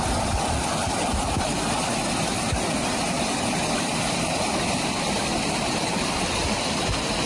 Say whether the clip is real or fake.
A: real